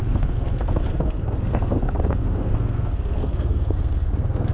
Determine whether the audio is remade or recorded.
remade